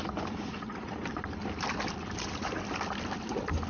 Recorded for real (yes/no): yes